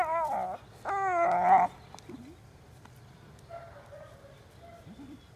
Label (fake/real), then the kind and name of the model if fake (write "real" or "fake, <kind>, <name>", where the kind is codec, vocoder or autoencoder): real